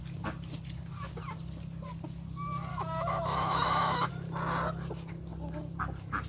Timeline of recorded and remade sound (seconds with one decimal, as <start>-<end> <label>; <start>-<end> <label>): 0.0-2.7 recorded; 2.7-4.1 remade; 4.1-6.3 recorded